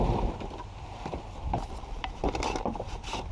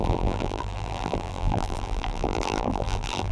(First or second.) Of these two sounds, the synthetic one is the second